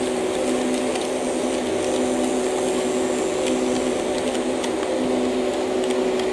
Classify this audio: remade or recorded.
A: recorded